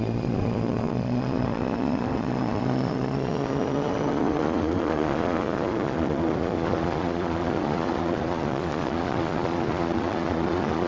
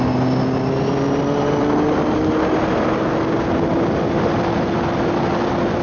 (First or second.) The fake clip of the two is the first